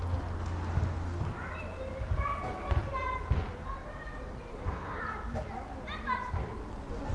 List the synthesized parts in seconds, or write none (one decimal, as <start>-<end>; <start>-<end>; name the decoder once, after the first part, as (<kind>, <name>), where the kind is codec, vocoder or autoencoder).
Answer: 4.5-5.0 (codec, SNAC)

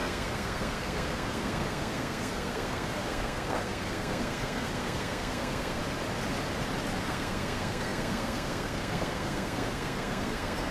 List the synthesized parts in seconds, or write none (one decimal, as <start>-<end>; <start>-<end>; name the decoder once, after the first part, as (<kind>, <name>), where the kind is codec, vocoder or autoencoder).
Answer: 0.0-5.8 (codec, SNAC); 7.0-10.7